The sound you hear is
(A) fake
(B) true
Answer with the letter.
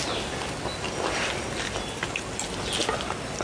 B